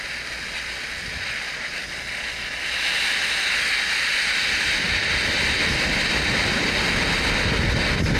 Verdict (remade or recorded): recorded